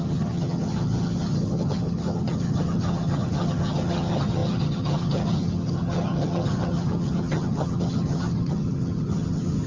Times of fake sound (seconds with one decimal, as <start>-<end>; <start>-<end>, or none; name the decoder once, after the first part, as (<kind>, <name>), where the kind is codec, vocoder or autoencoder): 0.0-9.7 (vocoder, HiFi-GAN)